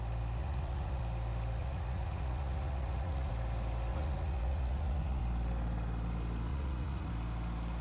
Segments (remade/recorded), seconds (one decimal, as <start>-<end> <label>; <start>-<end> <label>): 0.0-0.4 recorded; 0.4-1.0 remade; 1.0-1.6 recorded; 1.6-3.3 remade; 3.3-3.9 recorded; 3.9-5.2 remade; 5.2-6.5 recorded; 6.5-7.1 remade; 7.1-7.8 recorded